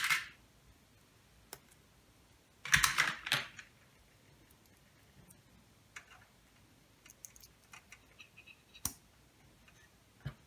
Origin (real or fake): real